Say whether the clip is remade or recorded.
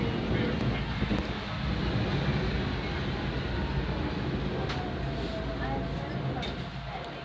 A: recorded